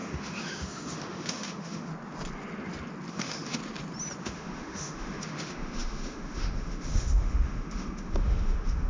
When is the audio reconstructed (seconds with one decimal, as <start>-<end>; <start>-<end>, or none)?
0.0-1.9; 3.1-3.6; 4.2-8.9